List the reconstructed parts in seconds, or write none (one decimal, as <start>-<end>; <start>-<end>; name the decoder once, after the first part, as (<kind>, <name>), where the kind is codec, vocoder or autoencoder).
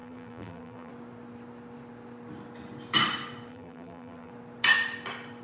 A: 0.0-0.9 (vocoder, BigVGAN v2); 3.5-4.3